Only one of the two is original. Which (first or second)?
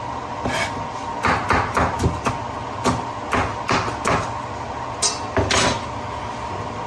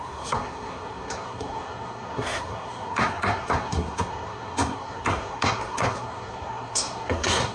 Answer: first